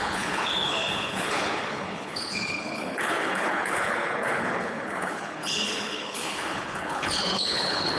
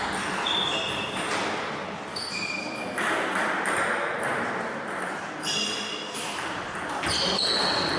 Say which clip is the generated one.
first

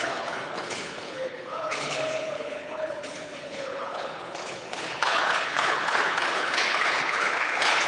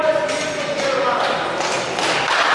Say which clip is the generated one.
first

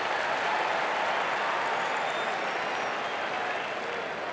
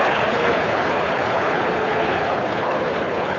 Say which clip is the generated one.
second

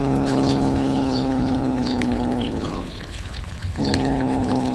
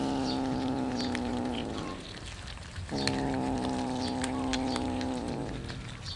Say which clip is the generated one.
first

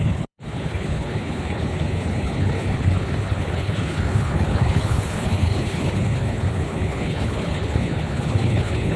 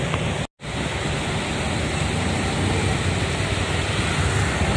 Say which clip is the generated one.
first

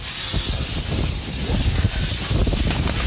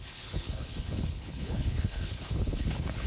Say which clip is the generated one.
second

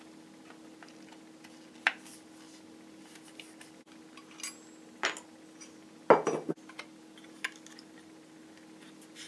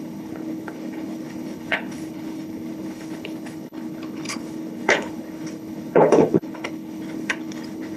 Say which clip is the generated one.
second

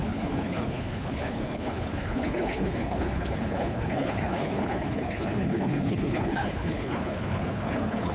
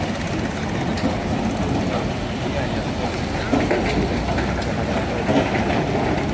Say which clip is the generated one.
first